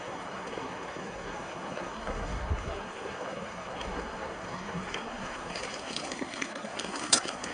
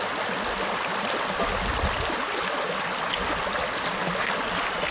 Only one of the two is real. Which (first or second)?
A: second